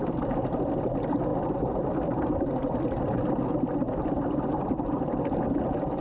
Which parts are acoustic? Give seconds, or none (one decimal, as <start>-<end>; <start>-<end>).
0.0-6.0